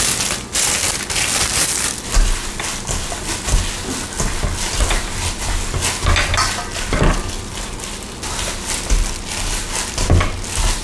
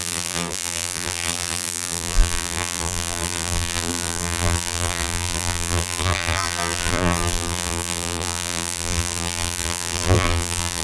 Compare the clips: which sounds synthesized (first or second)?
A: second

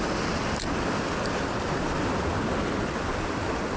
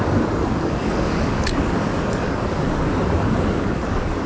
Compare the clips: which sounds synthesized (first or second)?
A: second